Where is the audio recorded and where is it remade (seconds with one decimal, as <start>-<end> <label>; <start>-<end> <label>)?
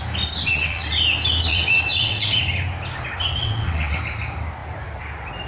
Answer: 0.0-0.4 recorded; 0.4-1.0 remade; 1.0-1.5 recorded; 1.5-2.4 remade; 2.4-3.4 recorded; 3.4-4.0 remade; 4.0-5.5 recorded